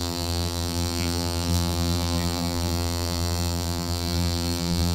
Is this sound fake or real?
fake